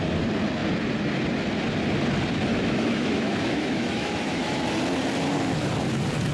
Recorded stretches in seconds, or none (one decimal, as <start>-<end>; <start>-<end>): 0.0-2.5; 4.6-6.3